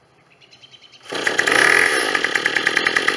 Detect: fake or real real